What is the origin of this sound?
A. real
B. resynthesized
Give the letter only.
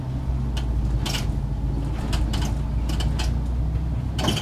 A